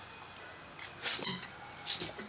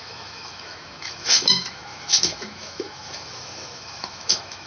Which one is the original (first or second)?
first